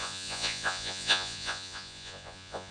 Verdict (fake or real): fake